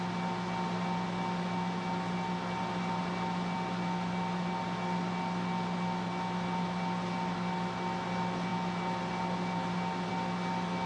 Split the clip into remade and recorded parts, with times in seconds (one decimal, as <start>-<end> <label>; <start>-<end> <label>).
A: 0.0-10.9 recorded